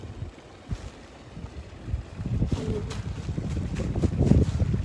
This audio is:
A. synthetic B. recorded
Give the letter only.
B